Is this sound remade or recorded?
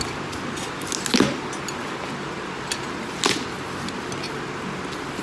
recorded